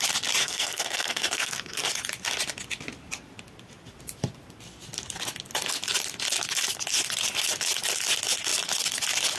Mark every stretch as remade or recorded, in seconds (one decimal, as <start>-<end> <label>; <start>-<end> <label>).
0.0-0.4 recorded; 0.4-1.9 remade; 1.9-9.4 recorded